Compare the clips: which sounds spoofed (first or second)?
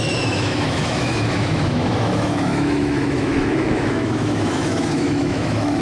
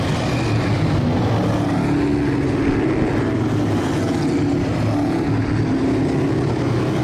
first